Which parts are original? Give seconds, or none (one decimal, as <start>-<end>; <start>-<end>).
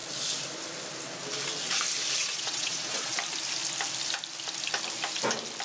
0.0-2.2; 3.1-5.6